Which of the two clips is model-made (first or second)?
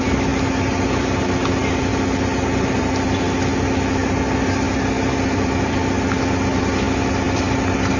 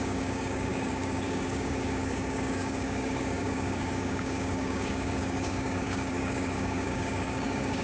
second